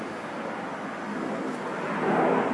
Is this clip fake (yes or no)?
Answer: no